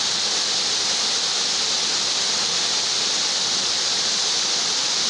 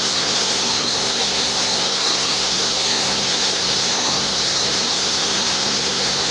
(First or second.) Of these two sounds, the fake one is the second